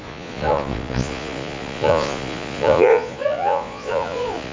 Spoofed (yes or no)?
yes